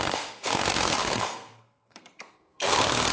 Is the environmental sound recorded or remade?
remade